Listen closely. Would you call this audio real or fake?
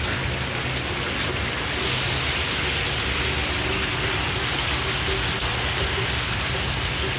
real